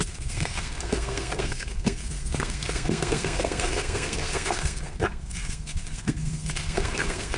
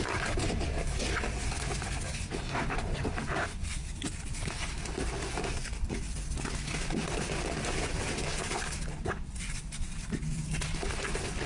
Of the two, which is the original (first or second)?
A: second